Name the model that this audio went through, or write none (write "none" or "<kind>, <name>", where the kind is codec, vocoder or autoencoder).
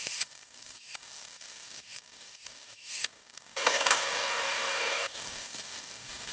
codec, DAC